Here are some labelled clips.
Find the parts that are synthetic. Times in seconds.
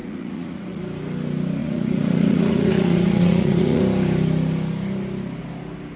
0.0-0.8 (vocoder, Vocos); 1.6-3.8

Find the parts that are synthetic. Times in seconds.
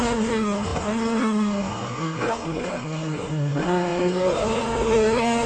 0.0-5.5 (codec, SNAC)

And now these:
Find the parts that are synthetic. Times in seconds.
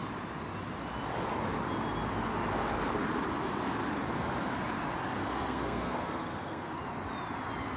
5.2-6.8 (codec, SNAC)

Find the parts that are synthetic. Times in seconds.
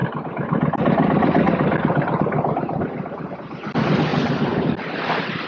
0.0-4.1 (vocoder, BigVGAN v2); 5.0-5.5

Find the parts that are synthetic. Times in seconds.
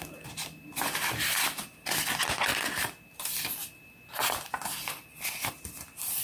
0.0-2.5 (vocoder, BigVGAN v2); 3.1-3.6; 4.2-6.2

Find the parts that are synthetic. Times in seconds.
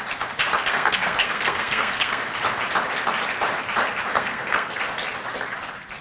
0.7-2.2 (codec, SNAC); 4.1-4.8